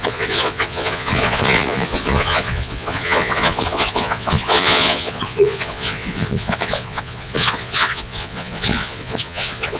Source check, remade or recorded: remade